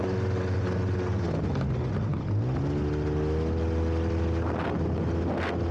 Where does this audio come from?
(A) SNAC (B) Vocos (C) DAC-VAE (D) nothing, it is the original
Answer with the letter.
D